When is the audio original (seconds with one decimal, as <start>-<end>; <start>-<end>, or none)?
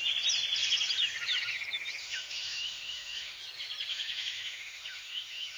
0.0-2.0; 3.4-3.9